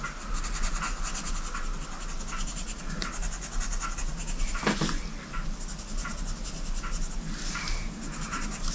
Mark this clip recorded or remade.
recorded